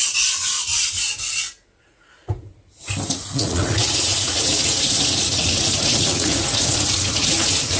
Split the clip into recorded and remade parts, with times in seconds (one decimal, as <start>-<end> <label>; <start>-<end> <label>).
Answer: 0.0-0.7 remade; 0.7-1.8 recorded; 1.8-2.4 remade; 2.4-3.1 recorded; 3.1-7.8 remade